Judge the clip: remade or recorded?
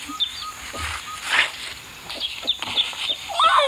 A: recorded